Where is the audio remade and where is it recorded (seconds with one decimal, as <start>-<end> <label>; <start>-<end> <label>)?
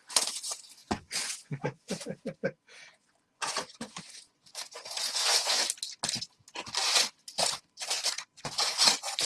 0.0-5.6 remade; 5.6-6.9 recorded; 6.9-9.2 remade